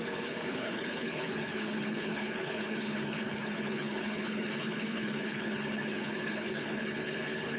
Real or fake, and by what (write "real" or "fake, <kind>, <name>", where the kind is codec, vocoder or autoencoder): fake, codec, HILCodec